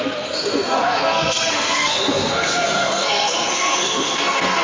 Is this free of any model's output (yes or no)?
no